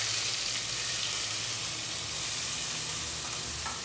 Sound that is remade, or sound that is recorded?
recorded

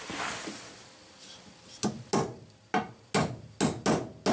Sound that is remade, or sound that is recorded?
recorded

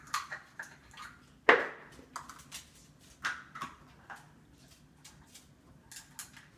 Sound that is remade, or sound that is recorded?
recorded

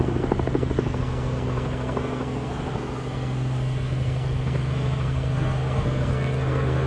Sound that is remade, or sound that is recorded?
remade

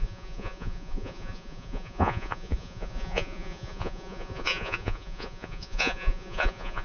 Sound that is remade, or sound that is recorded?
remade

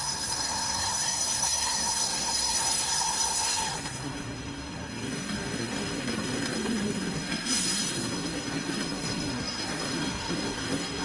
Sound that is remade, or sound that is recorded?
remade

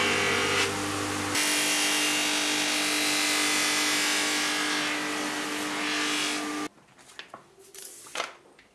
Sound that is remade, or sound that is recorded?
recorded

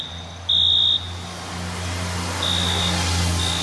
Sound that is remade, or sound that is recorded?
recorded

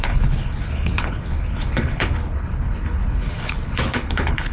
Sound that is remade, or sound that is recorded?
remade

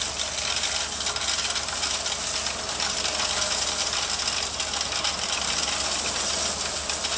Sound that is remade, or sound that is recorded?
recorded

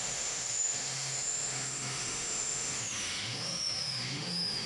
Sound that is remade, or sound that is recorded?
remade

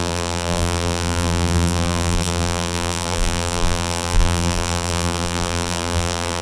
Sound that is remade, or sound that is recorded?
remade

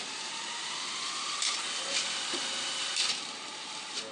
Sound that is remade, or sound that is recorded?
recorded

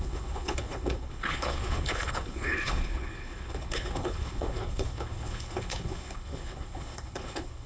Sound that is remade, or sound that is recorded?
remade